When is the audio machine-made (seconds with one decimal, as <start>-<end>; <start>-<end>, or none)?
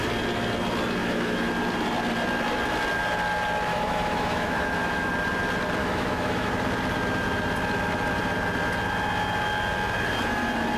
1.0-1.5; 3.7-5.1; 5.8-6.5